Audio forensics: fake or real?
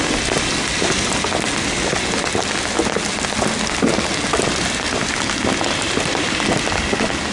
real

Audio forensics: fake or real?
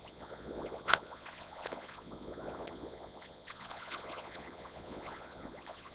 fake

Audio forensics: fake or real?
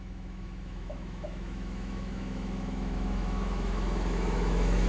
fake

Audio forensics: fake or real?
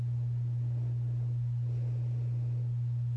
real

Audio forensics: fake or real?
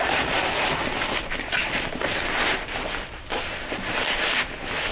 real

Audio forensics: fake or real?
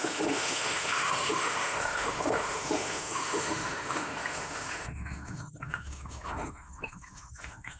fake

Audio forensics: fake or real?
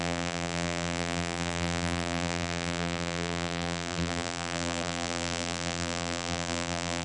fake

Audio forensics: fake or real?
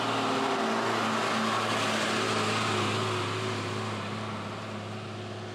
real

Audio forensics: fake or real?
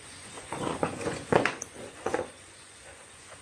fake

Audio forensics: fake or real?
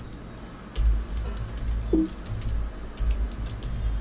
real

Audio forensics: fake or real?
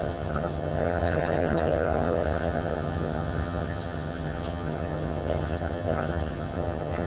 fake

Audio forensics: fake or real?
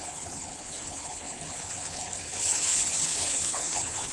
fake